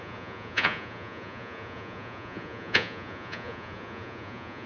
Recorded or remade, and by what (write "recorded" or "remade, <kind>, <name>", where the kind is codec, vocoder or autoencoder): remade, vocoder, Vocos